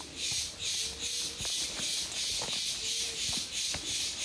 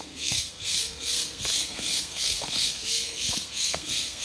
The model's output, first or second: second